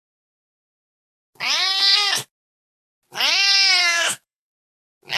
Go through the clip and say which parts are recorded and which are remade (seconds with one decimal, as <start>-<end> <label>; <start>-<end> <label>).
0.0-3.8 recorded; 3.8-4.6 remade; 4.6-5.2 recorded